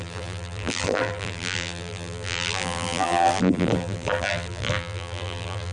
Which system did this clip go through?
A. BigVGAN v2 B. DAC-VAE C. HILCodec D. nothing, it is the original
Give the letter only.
A